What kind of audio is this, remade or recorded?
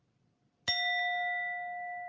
recorded